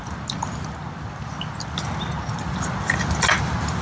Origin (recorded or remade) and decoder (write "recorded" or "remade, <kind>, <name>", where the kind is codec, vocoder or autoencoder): recorded